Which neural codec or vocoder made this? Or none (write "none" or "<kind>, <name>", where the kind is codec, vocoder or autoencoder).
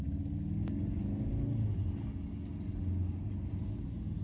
none